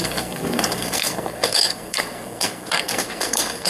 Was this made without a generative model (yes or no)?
no